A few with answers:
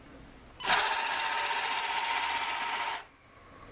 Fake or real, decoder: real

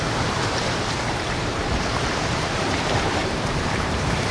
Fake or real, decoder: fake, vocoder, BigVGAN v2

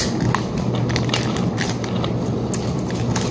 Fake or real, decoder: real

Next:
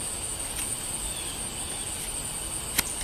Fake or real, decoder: real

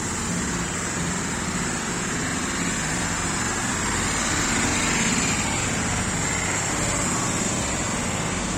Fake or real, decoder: real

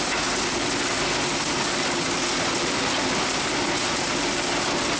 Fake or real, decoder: real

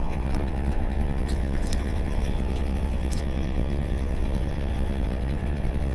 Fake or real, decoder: fake, vocoder, WaveNeXt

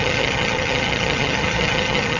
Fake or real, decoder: fake, vocoder, HiFi-GAN